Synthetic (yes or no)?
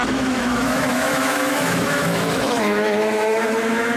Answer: yes